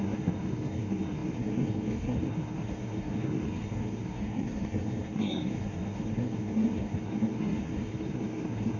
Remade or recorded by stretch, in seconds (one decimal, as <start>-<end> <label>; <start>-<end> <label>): 0.0-8.8 remade